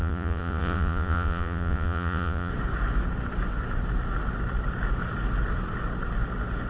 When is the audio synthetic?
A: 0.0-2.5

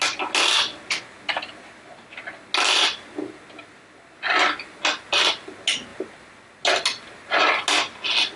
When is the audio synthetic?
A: none

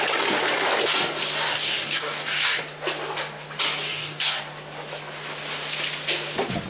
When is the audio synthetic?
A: 1.5-2.6; 3.9-4.4

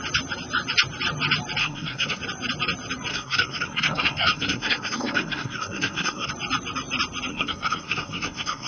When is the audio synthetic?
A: 1.6-2.2; 3.1-6.3; 7.3-8.7

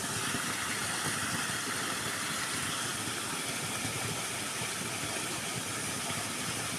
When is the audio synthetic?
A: none

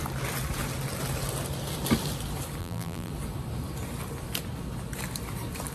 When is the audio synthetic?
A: 2.6-3.1

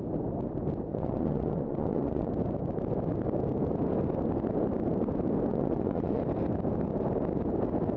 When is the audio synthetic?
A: 0.9-2.3; 5.5-6.2